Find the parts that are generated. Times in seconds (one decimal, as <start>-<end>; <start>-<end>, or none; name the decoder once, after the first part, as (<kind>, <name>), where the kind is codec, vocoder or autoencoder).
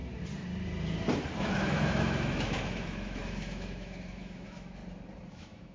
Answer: 1.4-4.8 (autoencoder, DAC-VAE); 5.3-5.7